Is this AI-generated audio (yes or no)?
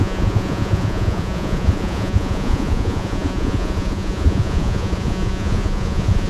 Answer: yes